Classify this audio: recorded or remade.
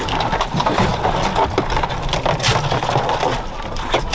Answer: recorded